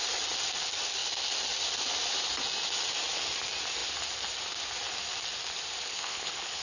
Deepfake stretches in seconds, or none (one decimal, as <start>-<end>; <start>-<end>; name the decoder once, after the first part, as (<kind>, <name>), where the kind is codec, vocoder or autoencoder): 5.9-6.6 (codec, HILCodec)